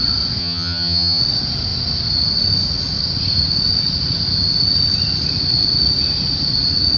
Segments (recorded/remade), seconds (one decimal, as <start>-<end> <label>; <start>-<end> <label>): 0.0-0.4 recorded; 0.4-1.2 remade; 1.2-7.0 recorded